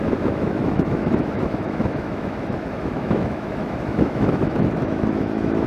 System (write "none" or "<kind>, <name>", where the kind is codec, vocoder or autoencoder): autoencoder, DAC-VAE